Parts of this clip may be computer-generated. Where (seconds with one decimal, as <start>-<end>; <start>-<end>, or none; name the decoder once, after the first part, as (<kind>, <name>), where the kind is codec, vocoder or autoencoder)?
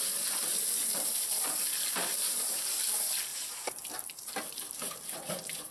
0.0-0.5 (vocoder, BigVGAN v2); 1.9-5.7